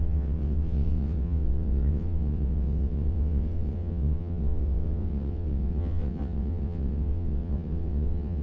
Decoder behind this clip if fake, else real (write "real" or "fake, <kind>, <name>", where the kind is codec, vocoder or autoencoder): fake, vocoder, WaveNeXt